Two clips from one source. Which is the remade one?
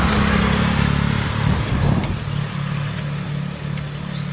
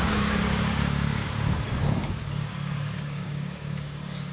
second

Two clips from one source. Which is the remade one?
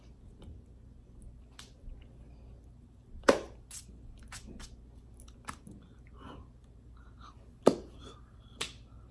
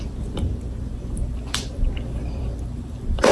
second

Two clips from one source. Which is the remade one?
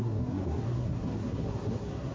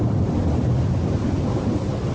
first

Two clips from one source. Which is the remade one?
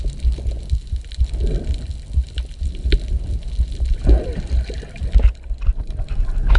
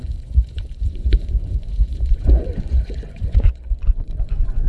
second